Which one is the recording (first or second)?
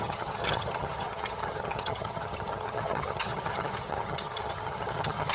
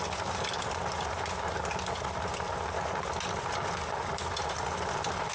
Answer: second